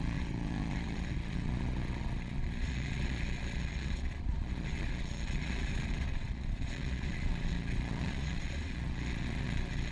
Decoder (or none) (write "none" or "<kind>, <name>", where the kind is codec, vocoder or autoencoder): vocoder, Vocos